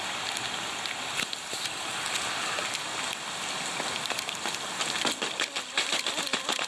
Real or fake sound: real